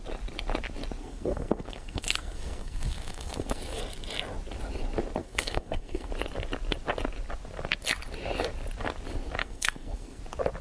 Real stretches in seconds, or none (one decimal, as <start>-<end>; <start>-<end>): 0.0-1.0; 3.8-5.2; 6.1-9.4; 10.2-10.6